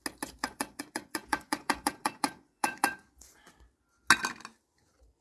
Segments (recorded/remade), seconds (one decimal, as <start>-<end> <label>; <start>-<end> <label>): 0.0-0.4 recorded; 0.4-3.5 remade; 3.5-5.2 recorded

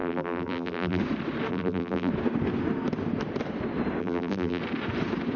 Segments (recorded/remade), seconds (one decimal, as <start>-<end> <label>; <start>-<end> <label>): 0.0-1.0 remade; 1.0-1.5 recorded; 1.5-2.1 remade; 2.1-4.0 recorded; 4.0-4.6 remade; 4.6-5.4 recorded

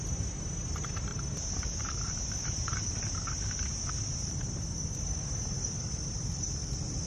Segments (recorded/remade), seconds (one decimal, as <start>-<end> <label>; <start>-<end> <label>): 0.0-1.1 recorded; 1.1-4.6 remade; 4.6-7.1 recorded

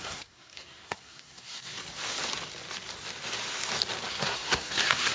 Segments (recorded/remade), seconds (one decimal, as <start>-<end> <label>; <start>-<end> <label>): 0.0-1.8 remade; 1.8-4.1 recorded; 4.1-5.1 remade